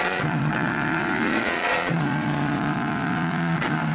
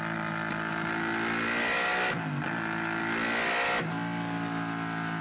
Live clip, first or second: second